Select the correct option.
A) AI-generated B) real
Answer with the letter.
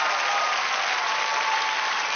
B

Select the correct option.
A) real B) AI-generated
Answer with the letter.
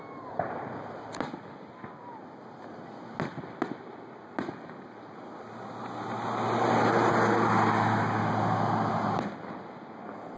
A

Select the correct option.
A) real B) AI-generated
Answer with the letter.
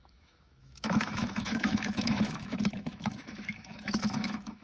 B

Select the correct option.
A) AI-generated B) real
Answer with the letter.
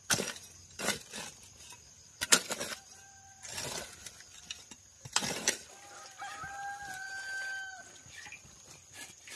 B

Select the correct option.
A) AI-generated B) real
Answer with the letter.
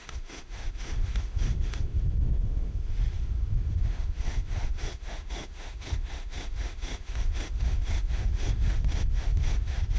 A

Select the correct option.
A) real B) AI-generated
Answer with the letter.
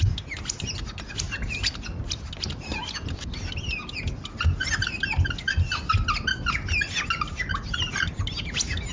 A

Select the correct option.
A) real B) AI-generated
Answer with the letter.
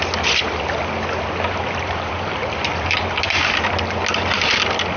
A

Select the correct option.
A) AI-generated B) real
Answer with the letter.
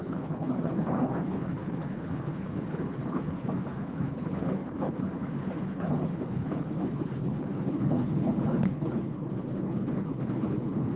A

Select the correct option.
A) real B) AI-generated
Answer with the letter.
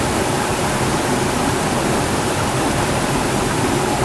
A